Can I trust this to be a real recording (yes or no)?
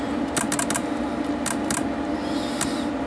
yes